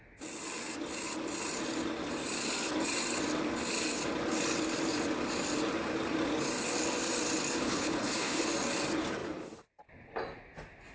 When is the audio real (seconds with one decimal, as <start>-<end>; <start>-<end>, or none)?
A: 0.0-7.6; 8.5-10.9